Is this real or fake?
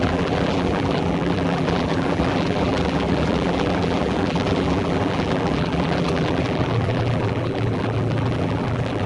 fake